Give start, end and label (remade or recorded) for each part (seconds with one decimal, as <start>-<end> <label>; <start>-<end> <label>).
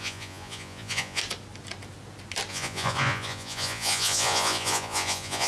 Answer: 0.0-1.2 remade; 1.2-2.5 recorded; 2.5-5.5 remade